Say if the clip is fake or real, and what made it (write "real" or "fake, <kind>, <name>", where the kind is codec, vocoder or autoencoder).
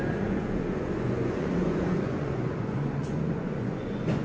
fake, vocoder, Vocos